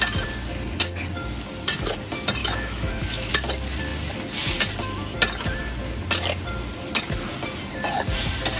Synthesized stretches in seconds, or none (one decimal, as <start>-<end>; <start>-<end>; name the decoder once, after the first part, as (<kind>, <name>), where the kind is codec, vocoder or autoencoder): 2.4-3.3 (autoencoder, DAC-VAE)